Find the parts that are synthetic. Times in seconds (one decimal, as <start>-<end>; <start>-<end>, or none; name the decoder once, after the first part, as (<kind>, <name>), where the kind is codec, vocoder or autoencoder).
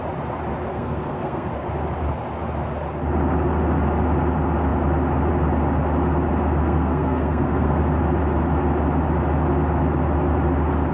0.7-1.5 (codec, SNAC); 6.6-7.8